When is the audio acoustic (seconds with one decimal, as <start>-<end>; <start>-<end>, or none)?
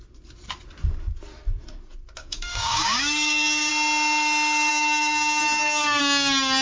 0.0-2.2; 3.7-4.7; 6.0-6.6